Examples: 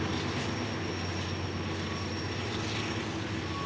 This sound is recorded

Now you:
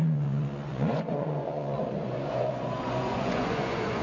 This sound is remade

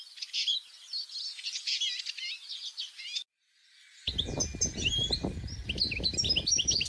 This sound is recorded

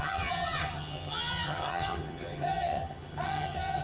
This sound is remade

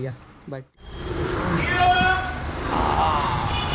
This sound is remade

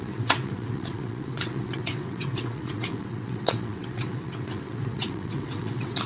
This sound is remade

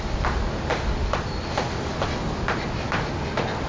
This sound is recorded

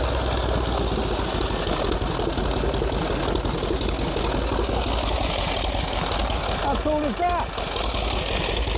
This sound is recorded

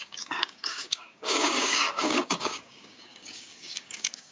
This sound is remade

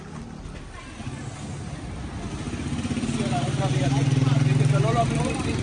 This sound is recorded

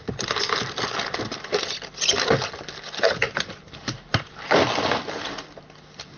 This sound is recorded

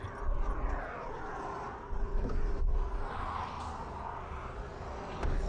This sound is recorded